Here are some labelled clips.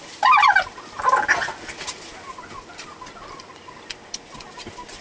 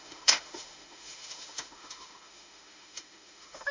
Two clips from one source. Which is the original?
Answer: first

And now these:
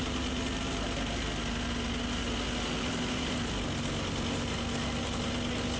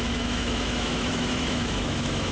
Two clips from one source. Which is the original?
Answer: first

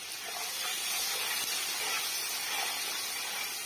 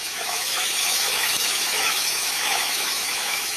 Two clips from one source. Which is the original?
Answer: first